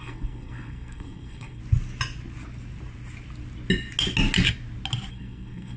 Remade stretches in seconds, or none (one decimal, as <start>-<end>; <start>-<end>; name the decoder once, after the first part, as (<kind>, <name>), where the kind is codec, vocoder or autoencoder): 0.0-1.6 (codec, SNAC); 5.1-5.8